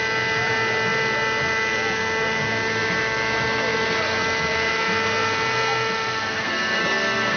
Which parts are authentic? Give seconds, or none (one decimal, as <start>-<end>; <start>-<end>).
0.0-6.3